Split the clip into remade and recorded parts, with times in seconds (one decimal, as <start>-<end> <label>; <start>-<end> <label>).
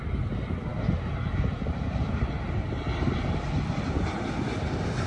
0.0-5.1 recorded